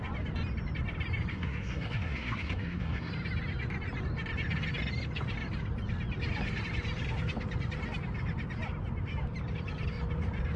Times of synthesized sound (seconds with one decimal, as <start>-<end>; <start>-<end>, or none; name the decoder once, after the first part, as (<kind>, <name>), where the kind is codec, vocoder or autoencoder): 1.3-3.1 (codec, SNAC)